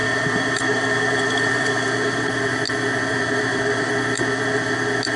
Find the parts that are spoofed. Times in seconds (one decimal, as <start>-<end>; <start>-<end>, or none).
0.0-2.3; 3.1-3.9